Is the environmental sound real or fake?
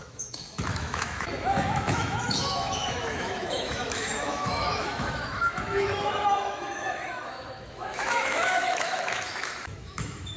fake